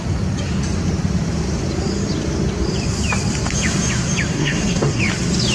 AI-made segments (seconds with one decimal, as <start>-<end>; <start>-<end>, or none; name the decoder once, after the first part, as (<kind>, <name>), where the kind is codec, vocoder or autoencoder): 4.3-5.0 (codec, SNAC)